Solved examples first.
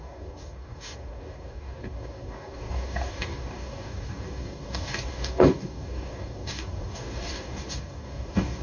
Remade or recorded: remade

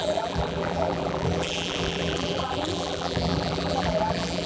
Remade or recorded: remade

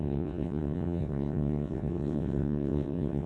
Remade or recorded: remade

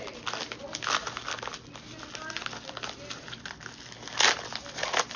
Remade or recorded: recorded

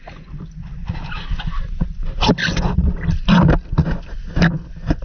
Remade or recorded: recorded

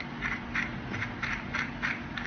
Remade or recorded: recorded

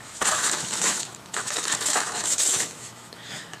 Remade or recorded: remade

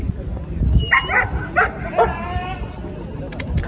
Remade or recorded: recorded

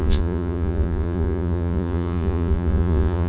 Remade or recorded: remade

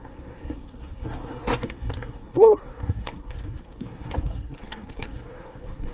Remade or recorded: remade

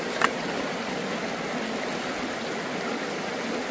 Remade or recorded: recorded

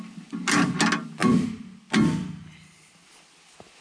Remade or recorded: recorded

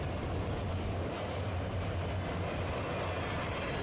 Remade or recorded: recorded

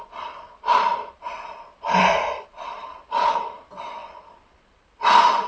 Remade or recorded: recorded